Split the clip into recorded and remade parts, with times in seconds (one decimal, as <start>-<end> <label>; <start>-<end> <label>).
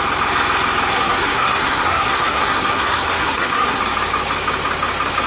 0.0-0.9 recorded; 0.9-3.8 remade; 3.8-5.3 recorded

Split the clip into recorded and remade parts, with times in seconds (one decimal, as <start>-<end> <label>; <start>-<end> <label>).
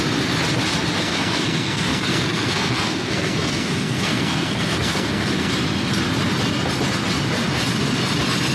0.0-1.0 recorded; 1.0-5.5 remade; 5.5-8.5 recorded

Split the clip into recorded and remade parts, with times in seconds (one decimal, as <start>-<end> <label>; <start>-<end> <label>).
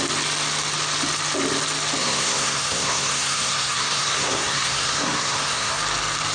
0.0-2.0 recorded; 2.0-5.8 remade; 5.8-6.3 recorded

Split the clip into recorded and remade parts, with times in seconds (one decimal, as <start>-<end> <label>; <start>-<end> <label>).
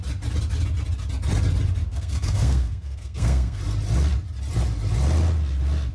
0.0-1.9 recorded; 1.9-3.6 remade; 3.6-5.9 recorded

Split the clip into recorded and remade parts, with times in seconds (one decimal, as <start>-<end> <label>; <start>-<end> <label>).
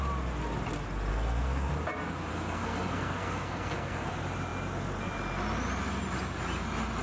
0.0-1.1 recorded; 1.1-1.7 remade; 1.7-2.3 recorded; 2.3-4.1 remade; 4.1-7.0 recorded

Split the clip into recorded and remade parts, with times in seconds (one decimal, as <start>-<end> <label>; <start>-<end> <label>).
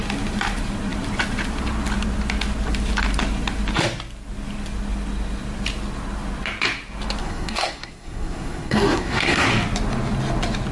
0.0-7.2 recorded; 7.2-9.5 remade; 9.5-10.7 recorded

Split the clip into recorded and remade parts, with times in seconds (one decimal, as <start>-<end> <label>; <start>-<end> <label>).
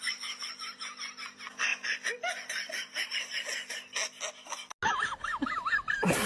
0.0-6.3 recorded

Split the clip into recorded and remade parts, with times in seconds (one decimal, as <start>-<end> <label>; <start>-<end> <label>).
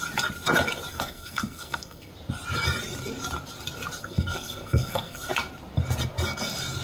0.0-0.9 recorded; 0.9-2.1 remade; 2.1-4.0 recorded; 4.0-5.3 remade; 5.3-6.8 recorded